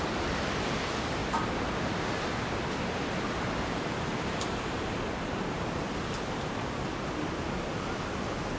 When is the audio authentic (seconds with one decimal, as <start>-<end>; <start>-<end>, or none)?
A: 0.0-1.2; 1.8-5.3; 6.0-8.6